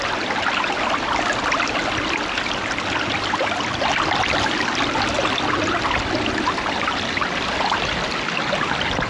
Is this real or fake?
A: real